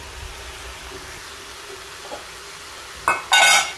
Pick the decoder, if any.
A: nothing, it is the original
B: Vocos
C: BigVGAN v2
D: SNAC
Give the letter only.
A